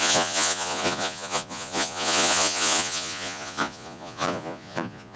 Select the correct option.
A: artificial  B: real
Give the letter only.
A